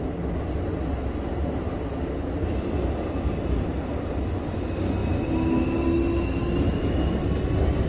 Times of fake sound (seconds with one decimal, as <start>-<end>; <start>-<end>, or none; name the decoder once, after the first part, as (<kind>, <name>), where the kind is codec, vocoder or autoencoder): none